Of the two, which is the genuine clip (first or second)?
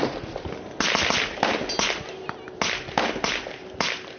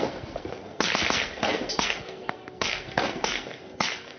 first